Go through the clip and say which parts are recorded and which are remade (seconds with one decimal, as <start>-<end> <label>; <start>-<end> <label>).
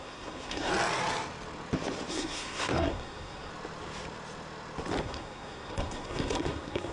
0.0-0.7 remade; 0.7-2.1 recorded; 2.1-3.5 remade; 3.5-5.0 recorded; 5.0-6.9 remade